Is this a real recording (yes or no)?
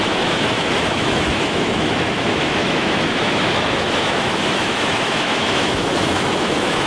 no